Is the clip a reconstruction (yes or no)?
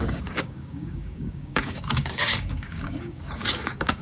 yes